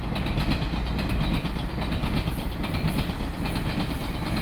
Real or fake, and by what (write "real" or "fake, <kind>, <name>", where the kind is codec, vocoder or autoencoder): real